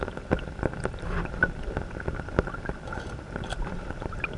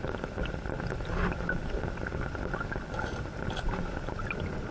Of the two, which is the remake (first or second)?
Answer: first